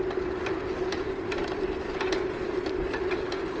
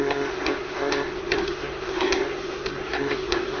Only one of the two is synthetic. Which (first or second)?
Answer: second